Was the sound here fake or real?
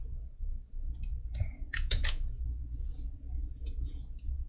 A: fake